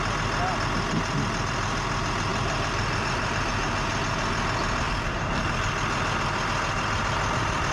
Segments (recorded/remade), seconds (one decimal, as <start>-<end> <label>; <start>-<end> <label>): 0.0-2.3 recorded; 2.3-3.5 remade; 3.5-7.7 recorded